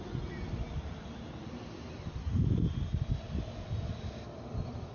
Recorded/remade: recorded